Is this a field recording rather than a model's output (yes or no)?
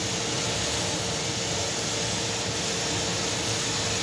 yes